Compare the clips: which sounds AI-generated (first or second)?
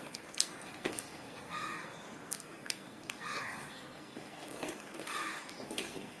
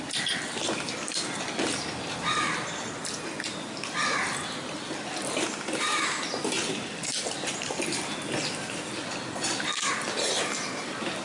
first